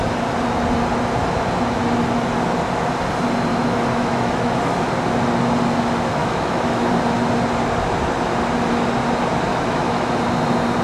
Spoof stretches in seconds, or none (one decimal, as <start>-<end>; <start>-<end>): 3.5-4.6; 6.2-6.9; 9.5-10.1